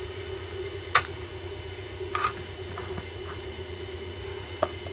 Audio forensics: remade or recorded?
remade